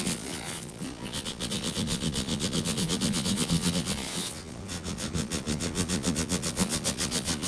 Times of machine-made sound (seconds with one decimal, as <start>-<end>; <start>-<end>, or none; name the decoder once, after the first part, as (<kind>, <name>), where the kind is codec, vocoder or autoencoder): 0.0-7.5 (vocoder, Vocos)